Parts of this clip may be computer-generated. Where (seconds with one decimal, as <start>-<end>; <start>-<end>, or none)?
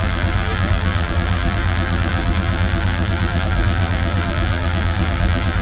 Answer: 0.0-5.6